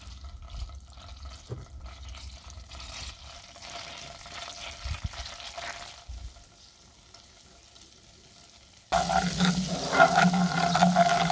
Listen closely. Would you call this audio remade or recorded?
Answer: recorded